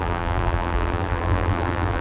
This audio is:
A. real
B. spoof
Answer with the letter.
B